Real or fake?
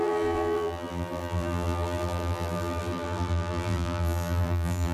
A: fake